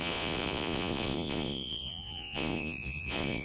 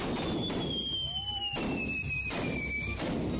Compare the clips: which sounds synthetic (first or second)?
first